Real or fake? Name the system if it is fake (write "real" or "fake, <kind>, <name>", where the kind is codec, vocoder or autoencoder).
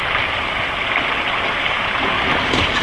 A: real